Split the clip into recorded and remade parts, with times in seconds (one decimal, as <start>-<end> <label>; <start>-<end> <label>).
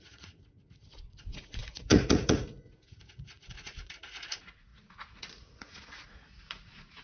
0.0-7.0 remade